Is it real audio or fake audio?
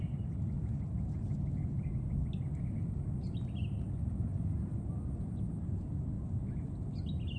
real